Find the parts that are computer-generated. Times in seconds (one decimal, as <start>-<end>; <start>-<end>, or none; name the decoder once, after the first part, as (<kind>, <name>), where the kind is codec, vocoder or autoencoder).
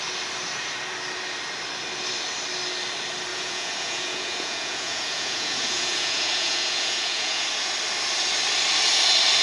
3.3-7.7 (vocoder, Vocos)